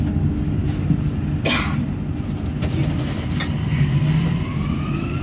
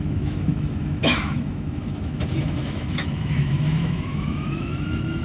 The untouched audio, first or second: first